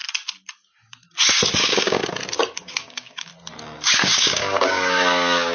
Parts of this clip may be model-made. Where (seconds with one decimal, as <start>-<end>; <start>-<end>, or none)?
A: 1.6-2.0; 2.6-3.3; 3.9-5.5